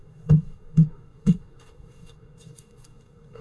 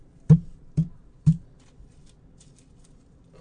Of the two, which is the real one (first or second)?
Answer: second